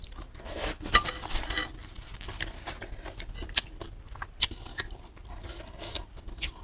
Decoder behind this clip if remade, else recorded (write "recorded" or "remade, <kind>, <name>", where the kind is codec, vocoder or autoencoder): recorded